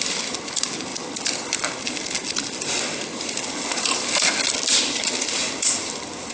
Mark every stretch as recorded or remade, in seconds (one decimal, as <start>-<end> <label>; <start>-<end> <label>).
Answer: 0.0-5.4 recorded; 5.4-6.3 remade